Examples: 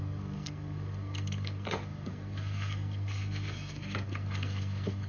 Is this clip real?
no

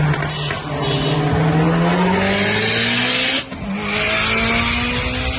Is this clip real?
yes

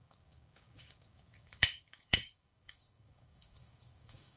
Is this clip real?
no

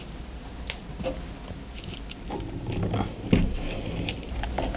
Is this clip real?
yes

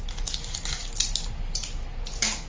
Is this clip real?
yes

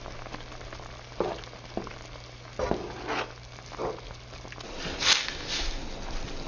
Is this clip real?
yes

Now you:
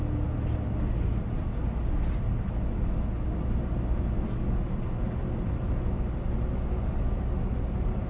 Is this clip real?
yes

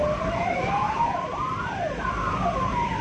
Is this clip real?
no